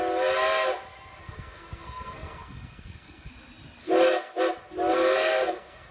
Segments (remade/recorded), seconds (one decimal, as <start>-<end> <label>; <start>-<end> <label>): 0.0-1.2 recorded; 1.2-3.3 remade; 3.3-3.8 recorded; 3.8-4.4 remade; 4.4-4.9 recorded; 4.9-5.9 remade